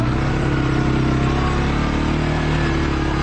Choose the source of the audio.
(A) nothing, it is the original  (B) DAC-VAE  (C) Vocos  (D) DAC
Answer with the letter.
A